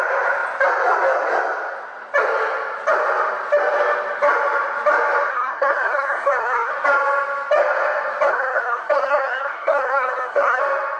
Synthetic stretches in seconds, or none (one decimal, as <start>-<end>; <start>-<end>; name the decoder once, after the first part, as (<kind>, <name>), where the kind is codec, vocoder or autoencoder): 5.3-6.7 (codec, SNAC); 8.3-10.6